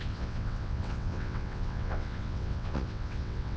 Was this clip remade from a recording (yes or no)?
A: yes